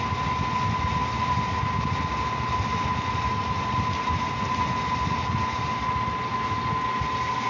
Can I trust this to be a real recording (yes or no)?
yes